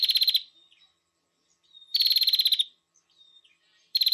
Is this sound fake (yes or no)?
no